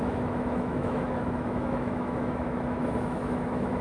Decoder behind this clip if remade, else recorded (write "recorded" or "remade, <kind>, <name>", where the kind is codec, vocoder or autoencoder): remade, autoencoder, DAC-VAE